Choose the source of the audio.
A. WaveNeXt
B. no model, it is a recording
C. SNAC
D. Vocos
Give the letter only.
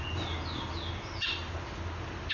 B